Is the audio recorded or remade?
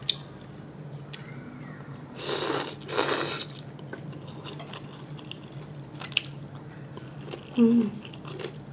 recorded